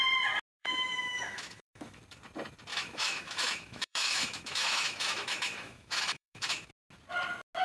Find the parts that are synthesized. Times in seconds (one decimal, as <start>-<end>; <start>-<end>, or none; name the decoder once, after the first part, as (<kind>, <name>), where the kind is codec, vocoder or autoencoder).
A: 0.6-2.0 (autoencoder, DAC-VAE); 2.7-6.7